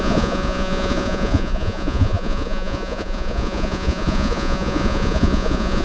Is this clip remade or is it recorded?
remade